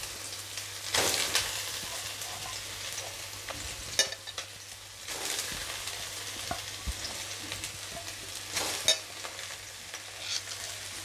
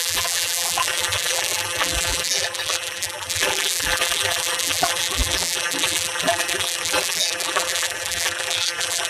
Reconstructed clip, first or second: second